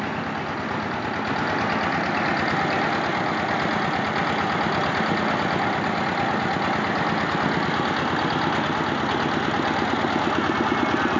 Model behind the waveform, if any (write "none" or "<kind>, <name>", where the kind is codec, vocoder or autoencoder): none